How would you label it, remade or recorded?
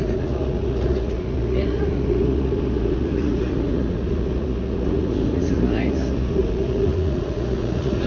remade